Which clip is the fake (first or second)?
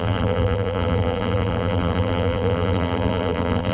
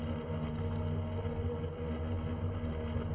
first